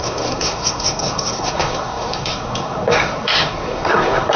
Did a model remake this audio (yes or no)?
yes